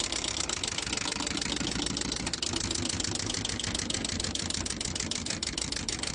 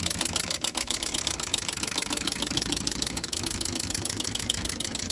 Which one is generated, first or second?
second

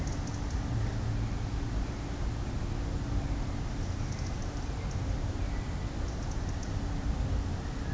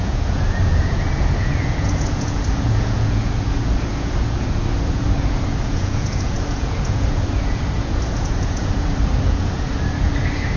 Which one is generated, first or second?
second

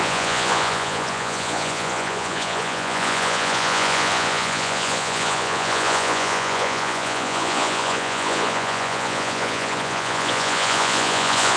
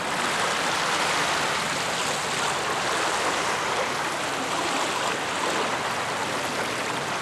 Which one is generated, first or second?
first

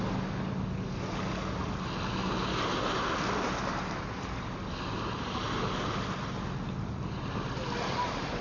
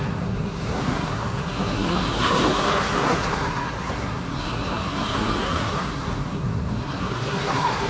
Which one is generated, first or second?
second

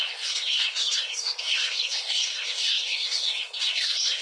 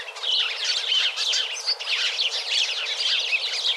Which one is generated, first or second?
first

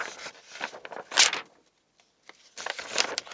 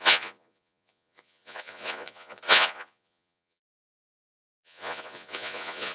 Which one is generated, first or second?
second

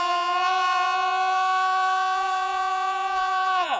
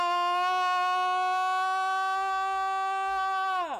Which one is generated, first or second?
first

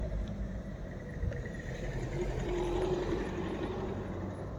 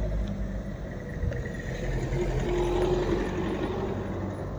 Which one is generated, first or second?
first